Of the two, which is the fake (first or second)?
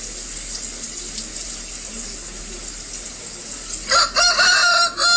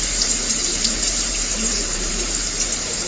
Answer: second